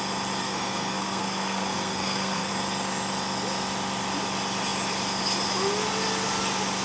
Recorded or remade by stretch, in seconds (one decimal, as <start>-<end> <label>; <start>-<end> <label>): 0.0-0.4 recorded; 0.4-2.5 remade; 2.5-6.8 recorded